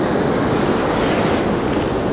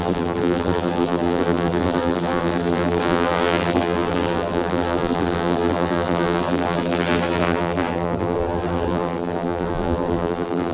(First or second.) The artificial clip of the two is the second